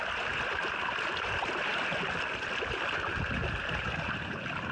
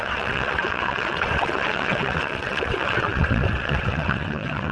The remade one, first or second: second